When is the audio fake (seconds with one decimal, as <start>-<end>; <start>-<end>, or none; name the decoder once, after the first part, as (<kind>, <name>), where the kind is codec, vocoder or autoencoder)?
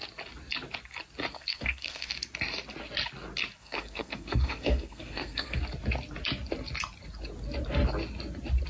1.3-2.1 (codec, SNAC); 3.6-5.6